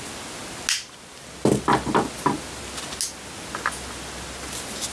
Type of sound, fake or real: real